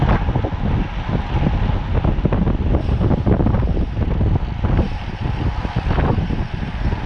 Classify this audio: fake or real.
real